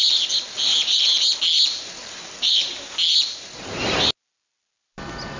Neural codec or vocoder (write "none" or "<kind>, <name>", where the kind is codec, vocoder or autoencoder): none